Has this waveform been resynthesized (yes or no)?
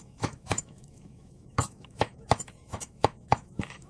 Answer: yes